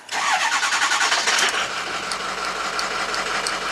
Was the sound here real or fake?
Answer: real